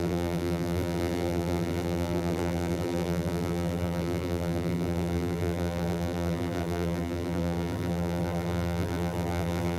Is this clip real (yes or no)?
no